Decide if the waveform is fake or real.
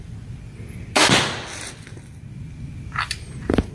real